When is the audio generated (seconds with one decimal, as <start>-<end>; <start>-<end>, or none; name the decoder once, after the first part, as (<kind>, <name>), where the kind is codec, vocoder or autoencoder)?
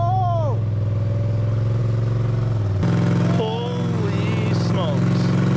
none